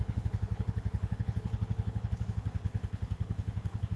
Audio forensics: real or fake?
fake